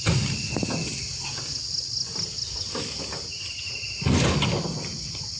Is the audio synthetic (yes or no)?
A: no